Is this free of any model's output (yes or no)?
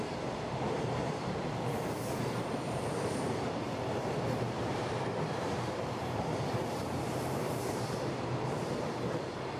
no